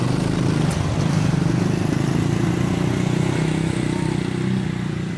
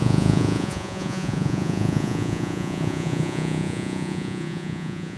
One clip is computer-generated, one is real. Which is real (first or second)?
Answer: first